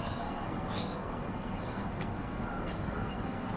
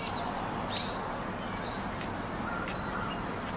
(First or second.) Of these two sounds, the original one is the second